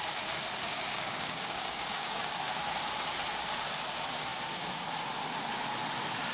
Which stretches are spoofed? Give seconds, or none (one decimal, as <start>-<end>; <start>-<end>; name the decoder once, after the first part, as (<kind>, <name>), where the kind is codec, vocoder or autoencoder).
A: 0.6-2.5 (codec, DAC)